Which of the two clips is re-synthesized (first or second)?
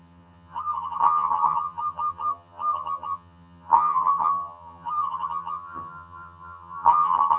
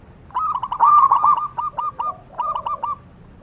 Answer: first